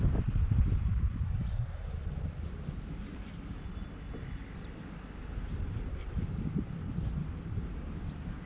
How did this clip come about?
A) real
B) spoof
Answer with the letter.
A